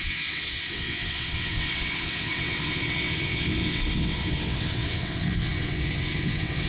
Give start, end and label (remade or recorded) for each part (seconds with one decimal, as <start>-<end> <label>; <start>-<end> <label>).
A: 0.0-6.7 remade